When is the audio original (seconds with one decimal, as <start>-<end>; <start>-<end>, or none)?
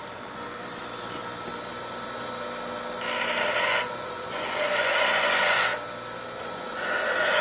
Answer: 0.0-3.6; 5.7-6.4